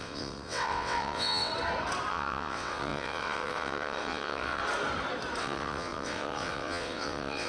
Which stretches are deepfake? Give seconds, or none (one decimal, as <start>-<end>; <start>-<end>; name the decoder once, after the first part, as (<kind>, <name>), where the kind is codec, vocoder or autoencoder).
0.0-1.5 (vocoder, WaveNeXt); 2.1-4.6; 5.4-7.5